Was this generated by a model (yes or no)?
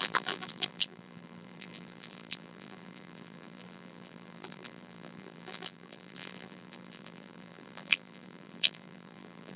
yes